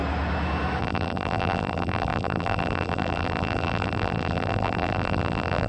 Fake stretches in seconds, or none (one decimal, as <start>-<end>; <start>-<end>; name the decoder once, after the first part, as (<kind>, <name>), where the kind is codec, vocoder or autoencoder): 0.8-5.7 (vocoder, BigVGAN v2)

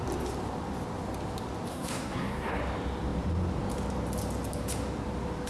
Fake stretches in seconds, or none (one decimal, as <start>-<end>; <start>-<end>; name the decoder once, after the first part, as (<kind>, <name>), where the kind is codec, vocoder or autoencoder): 1.7-2.6 (codec, SNAC)

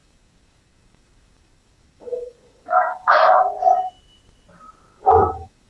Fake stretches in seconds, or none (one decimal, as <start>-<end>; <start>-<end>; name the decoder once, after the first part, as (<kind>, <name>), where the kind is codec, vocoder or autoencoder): 0.0-3.4 (codec, DAC); 4.9-5.7

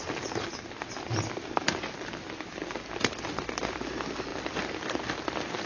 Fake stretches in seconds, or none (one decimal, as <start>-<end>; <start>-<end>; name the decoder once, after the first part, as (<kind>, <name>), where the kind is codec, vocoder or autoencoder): none